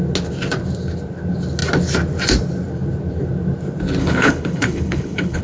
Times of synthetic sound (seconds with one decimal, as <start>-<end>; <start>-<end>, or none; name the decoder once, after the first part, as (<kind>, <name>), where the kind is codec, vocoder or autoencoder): 4.0-5.4 (codec, HILCodec)